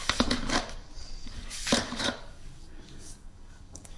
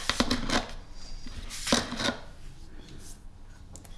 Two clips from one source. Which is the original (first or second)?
second